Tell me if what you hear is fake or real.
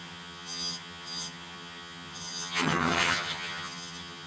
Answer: fake